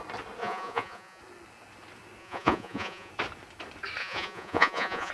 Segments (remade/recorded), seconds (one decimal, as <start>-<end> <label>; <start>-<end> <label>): 0.0-0.4 recorded; 0.4-1.2 remade; 1.2-2.2 recorded; 2.2-3.1 remade; 3.1-4.0 recorded; 4.0-5.1 remade